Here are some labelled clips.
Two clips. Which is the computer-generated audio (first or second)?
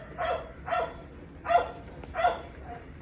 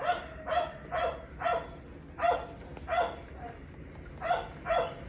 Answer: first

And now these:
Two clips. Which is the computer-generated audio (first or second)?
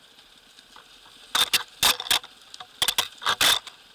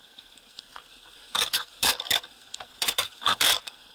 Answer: second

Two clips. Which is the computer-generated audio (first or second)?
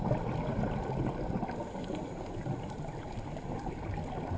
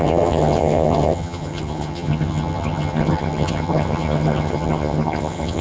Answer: second